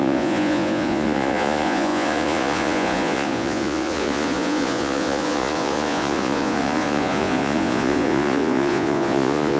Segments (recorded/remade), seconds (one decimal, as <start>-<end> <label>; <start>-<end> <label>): 0.0-9.6 remade